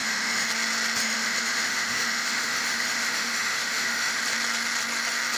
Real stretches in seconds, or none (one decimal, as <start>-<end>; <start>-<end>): 0.5-1.0; 4.2-5.4